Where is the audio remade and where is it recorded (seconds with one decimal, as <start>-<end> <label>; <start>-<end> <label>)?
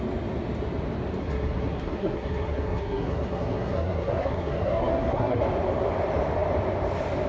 0.0-1.2 recorded; 1.2-5.4 remade; 5.4-7.3 recorded